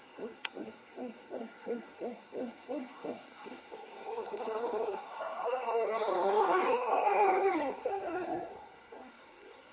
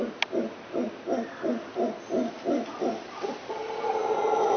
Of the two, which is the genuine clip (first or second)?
second